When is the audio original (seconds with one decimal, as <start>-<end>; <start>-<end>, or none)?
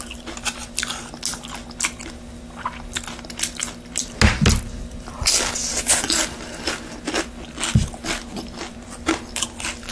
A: 0.0-9.9